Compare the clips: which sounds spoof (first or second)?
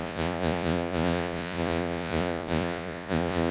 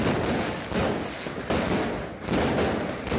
first